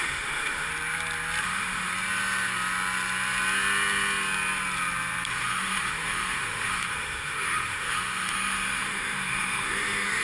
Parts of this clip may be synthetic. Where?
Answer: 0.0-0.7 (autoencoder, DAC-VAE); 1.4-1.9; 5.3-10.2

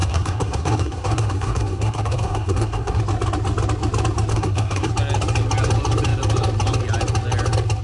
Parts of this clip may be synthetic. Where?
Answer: 0.0-3.0 (codec, SNAC); 4.3-4.9

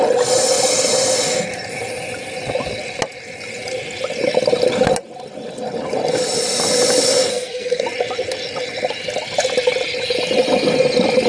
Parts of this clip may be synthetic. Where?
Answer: 7.3-7.8 (codec, SNAC)

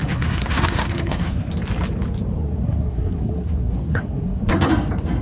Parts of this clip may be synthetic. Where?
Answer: 0.0-1.5 (codec, SNAC); 2.4-4.7

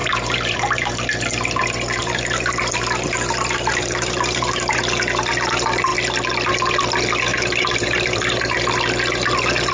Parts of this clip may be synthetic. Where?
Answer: 0.0-0.9 (vocoder, BigVGAN v2); 2.0-4.8; 7.3-8.5

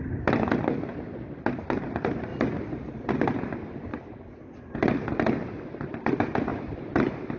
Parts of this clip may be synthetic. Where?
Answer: 0.0-0.6 (vocoder, BigVGAN v2); 2.3-3.1; 6.5-7.0

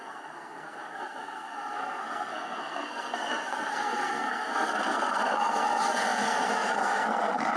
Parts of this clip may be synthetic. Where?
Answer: 0.0-7.6 (codec, SNAC)

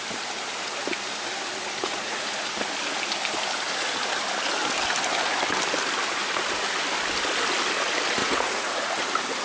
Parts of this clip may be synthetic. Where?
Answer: 1.8-2.5 (vocoder, Vocos); 8.2-8.9